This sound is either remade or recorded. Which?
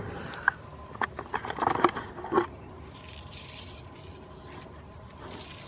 recorded